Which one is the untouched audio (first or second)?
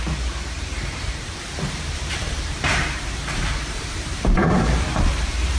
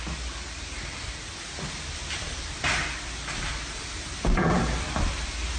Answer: second